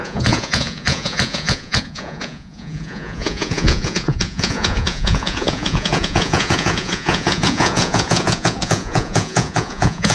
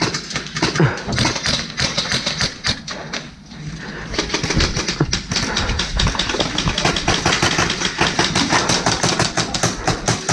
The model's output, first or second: first